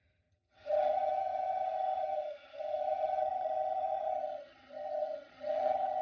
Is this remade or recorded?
remade